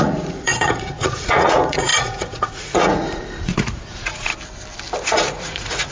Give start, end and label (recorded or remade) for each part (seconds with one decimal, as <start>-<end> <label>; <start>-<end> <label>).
0.0-4.3 remade; 4.3-5.0 recorded; 5.0-5.9 remade